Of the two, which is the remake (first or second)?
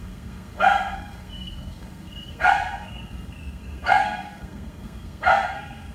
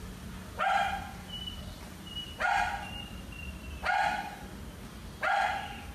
first